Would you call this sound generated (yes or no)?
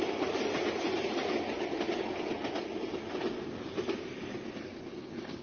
no